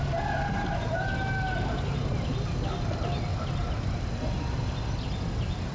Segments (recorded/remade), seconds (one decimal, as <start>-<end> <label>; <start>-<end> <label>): 0.0-5.7 recorded